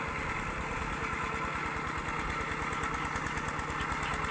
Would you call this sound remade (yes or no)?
no